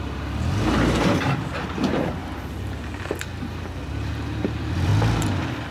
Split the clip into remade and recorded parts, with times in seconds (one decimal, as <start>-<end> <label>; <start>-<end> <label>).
0.0-2.2 remade; 2.2-4.1 recorded; 4.1-4.9 remade; 4.9-5.7 recorded